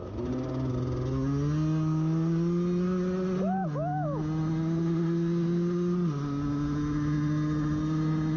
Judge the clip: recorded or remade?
recorded